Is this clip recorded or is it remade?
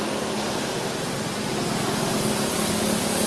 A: recorded